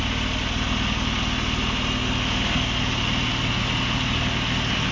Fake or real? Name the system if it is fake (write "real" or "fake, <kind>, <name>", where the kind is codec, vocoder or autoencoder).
real